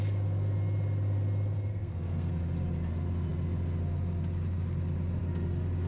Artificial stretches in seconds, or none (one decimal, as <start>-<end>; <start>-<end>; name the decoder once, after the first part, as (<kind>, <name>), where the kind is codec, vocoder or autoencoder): 1.7-2.3 (codec, SNAC)